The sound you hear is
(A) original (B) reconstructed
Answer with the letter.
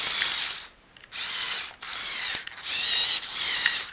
A